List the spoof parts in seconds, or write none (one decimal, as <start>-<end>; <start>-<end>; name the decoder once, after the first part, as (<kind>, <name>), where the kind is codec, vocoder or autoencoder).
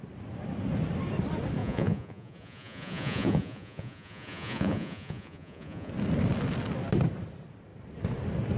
1.6-5.9 (vocoder, Vocos)